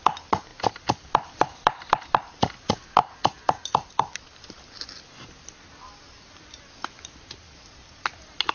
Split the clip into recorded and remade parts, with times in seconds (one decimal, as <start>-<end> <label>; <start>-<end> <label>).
0.0-3.0 recorded; 3.0-4.4 remade; 4.4-8.5 recorded